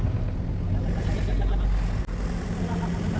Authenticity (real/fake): real